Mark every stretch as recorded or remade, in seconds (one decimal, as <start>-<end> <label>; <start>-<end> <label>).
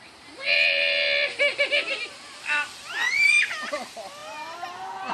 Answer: 0.0-1.5 remade; 1.5-2.1 recorded; 2.1-4.2 remade; 4.2-5.1 recorded